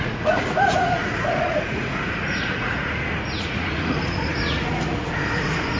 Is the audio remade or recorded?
remade